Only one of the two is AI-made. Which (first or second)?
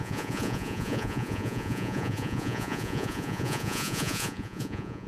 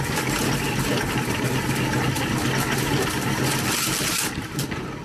first